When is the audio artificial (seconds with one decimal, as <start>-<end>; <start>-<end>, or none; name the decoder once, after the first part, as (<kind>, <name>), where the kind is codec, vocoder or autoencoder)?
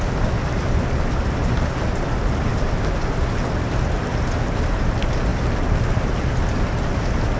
none